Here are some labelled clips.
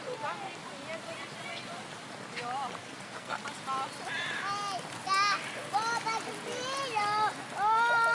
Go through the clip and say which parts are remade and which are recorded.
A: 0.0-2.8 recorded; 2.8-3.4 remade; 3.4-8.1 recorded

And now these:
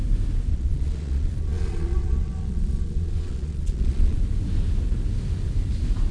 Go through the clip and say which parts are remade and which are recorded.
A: 0.0-0.5 recorded; 0.5-4.2 remade; 4.2-6.1 recorded